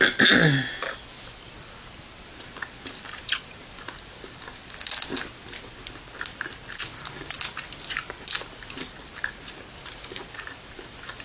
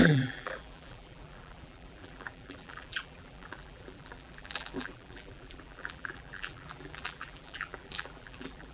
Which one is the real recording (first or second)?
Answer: first